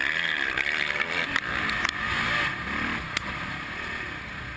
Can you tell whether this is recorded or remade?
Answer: recorded